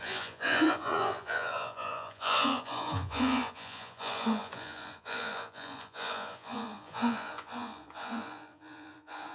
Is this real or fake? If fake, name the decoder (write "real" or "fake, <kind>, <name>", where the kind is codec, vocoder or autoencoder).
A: fake, vocoder, Vocos